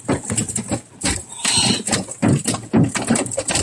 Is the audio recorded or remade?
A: recorded